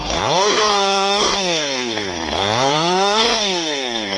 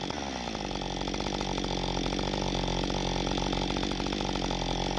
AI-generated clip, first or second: first